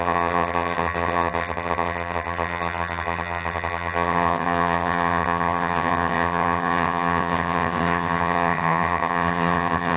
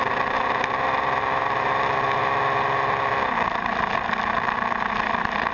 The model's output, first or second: first